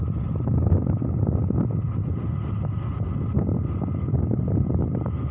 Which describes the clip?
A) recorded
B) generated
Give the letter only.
A